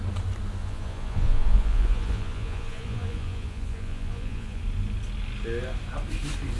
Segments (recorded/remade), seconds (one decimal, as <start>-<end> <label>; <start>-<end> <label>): 0.0-0.6 recorded; 0.6-4.6 remade; 4.6-6.6 recorded